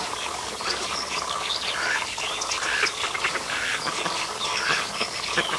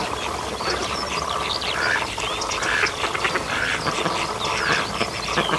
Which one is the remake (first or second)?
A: first